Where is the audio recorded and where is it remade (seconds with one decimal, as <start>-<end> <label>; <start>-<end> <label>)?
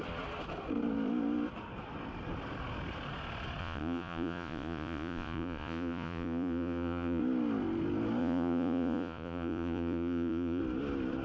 0.0-3.6 recorded; 3.6-7.2 remade; 7.2-8.2 recorded; 8.2-10.6 remade; 10.6-11.2 recorded